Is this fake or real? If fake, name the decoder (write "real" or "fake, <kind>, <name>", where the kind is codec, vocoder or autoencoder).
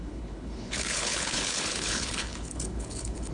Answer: fake, codec, HILCodec